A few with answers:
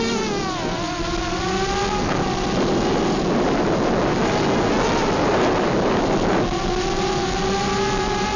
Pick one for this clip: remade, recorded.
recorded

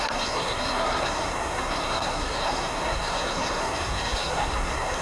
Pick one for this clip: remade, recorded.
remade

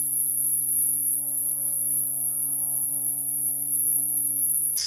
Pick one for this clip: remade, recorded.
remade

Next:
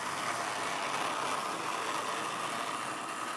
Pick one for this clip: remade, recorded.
recorded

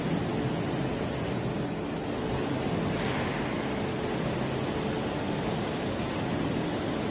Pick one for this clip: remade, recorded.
recorded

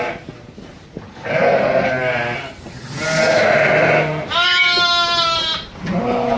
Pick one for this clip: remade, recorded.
recorded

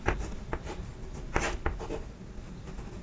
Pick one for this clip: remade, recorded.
recorded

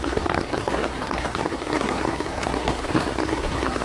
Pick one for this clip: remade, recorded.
remade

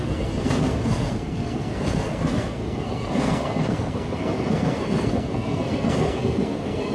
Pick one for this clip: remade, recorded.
remade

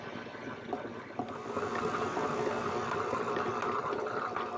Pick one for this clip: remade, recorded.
recorded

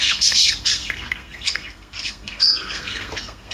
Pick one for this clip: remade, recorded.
remade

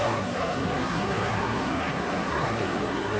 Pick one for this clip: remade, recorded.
remade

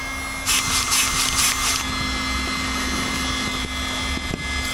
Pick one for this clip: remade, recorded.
recorded